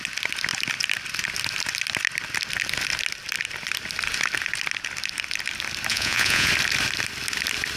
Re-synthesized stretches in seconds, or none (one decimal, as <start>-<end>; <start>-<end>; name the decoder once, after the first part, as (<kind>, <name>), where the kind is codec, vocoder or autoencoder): 5.9-6.5 (vocoder, Vocos)